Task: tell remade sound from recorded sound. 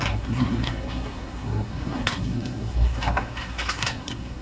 remade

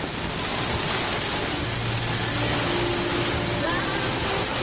recorded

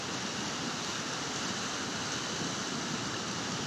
recorded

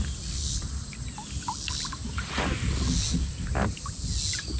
recorded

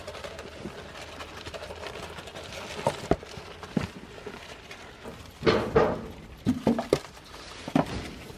recorded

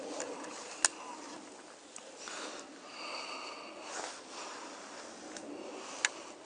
recorded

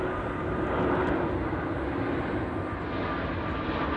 recorded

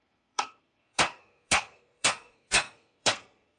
remade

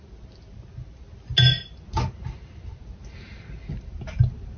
recorded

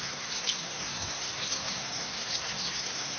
remade